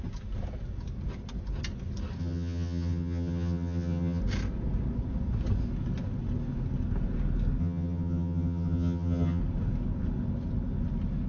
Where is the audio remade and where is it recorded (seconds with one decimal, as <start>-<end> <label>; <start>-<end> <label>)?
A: 0.0-2.2 recorded; 2.2-4.2 remade; 4.2-7.6 recorded; 7.6-9.4 remade; 9.4-11.3 recorded